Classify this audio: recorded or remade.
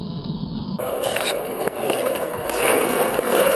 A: remade